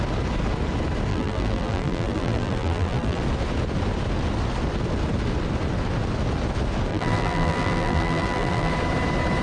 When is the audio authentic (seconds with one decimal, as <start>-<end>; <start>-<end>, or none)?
0.0-1.1; 3.2-6.9; 8.7-9.4